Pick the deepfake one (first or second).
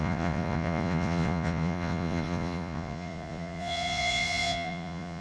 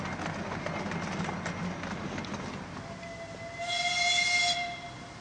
first